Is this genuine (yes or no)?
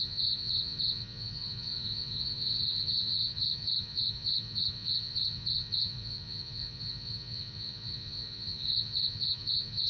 no